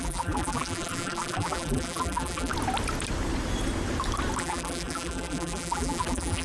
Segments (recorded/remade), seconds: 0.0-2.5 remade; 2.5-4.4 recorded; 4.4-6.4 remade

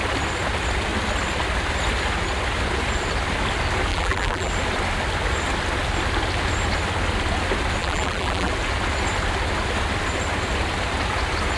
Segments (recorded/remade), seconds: 0.0-3.9 recorded; 3.9-4.5 remade; 4.5-7.8 recorded; 7.8-8.5 remade; 8.5-11.6 recorded

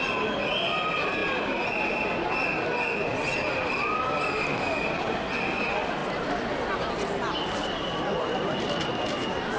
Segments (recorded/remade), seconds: 0.0-3.1 recorded; 3.1-3.7 remade; 3.7-6.0 recorded; 6.0-6.9 remade; 6.9-9.6 recorded